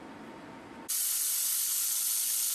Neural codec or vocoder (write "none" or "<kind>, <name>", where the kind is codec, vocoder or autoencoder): none